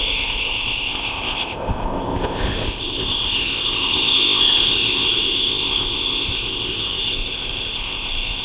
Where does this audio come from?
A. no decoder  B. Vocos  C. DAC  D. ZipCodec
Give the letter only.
D